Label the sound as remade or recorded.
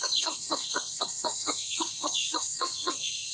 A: remade